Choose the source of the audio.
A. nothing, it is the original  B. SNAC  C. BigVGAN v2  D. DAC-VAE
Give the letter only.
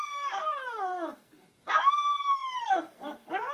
B